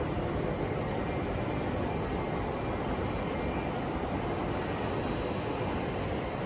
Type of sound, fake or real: real